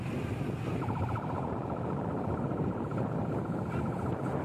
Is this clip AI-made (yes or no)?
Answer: no